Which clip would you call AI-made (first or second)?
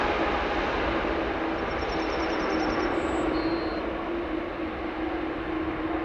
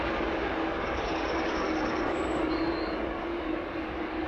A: second